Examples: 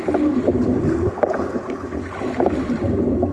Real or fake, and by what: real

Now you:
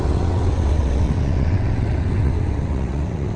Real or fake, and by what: fake, vocoder, WaveNeXt